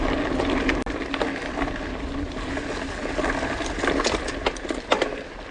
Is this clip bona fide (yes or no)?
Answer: yes